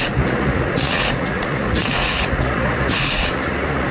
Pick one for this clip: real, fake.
fake